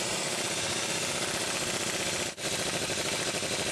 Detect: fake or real real